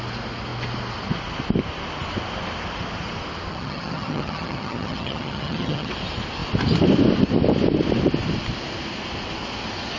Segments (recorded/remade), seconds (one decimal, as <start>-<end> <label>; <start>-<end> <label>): 0.0-3.5 recorded; 3.5-5.9 remade; 5.9-10.0 recorded